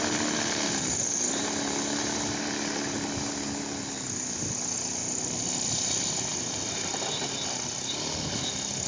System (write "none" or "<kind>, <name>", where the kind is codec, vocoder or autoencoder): none